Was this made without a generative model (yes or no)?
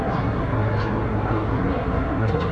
no